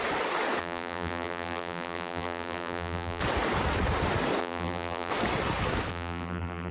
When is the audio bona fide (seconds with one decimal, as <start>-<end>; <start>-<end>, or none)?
0.0-0.6; 3.2-4.4; 5.1-5.9